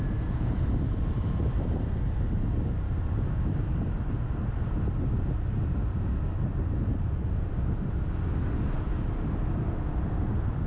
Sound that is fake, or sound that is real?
real